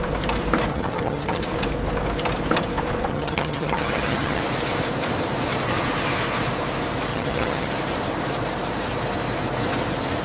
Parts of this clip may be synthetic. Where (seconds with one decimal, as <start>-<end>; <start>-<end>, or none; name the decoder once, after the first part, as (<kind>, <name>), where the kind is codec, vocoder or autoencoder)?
0.7-1.4 (vocoder, HiFi-GAN); 3.1-4.4; 7.1-7.7